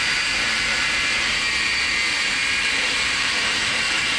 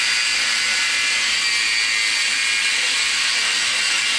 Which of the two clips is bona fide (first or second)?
second